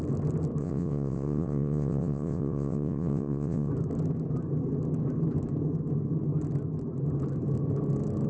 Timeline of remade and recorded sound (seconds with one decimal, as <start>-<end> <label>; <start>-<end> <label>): 0.0-0.6 recorded; 0.6-3.7 remade; 3.7-8.3 recorded